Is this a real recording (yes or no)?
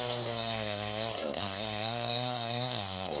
no